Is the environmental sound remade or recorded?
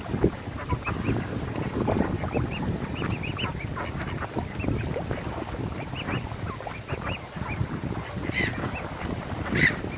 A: recorded